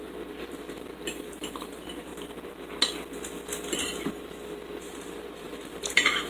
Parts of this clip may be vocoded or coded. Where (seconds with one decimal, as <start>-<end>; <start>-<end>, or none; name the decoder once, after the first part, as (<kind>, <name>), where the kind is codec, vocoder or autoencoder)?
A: 0.0-2.1 (vocoder, BigVGAN v2); 4.8-6.3